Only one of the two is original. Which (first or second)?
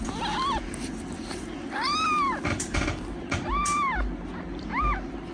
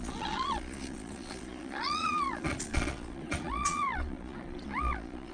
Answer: first